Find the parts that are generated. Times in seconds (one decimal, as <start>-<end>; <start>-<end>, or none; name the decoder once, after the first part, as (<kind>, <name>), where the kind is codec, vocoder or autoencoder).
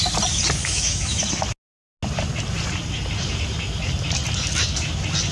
0.6-1.2 (autoencoder, DAC-VAE)